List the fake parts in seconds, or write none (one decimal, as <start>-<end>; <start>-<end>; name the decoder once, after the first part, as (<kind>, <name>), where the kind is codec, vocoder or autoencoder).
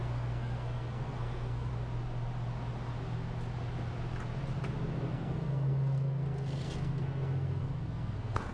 0.0-1.7 (codec, SNAC); 5.1-8.5